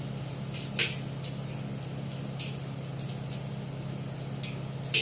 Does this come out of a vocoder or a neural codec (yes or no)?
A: no